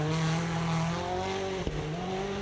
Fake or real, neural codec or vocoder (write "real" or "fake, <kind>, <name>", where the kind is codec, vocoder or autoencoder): real